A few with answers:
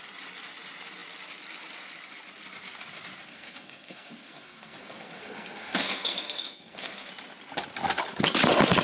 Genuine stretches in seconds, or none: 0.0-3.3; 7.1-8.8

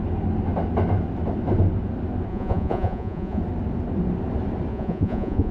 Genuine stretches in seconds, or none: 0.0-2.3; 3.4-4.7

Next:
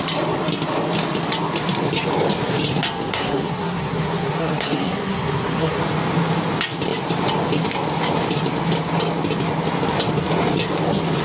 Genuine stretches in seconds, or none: 0.0-3.1; 5.8-11.2

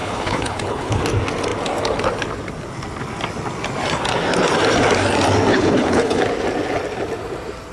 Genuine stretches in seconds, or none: 1.0-5.5; 6.2-7.7